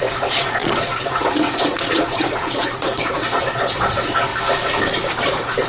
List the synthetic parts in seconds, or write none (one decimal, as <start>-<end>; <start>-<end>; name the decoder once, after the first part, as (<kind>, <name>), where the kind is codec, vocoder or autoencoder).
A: 0.0-4.3 (vocoder, Vocos)